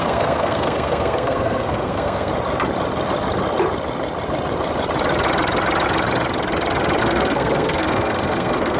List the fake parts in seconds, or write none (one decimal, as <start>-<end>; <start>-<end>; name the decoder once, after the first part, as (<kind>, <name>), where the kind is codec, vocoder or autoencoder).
0.0-2.3 (codec, SNAC); 7.0-8.8